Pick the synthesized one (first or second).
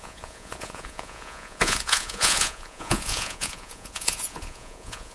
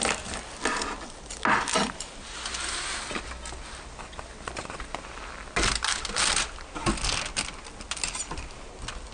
first